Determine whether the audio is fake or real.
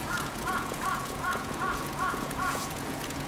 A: fake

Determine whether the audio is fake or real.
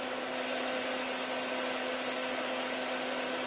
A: real